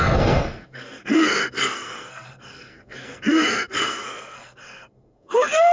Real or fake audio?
fake